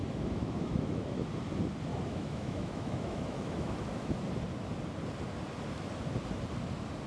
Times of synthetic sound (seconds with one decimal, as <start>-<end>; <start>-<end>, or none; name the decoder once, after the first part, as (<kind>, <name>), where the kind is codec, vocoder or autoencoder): 0.0-1.3 (autoencoder, DAC-VAE); 1.9-4.2